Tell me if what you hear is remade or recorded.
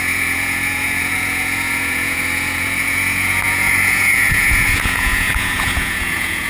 remade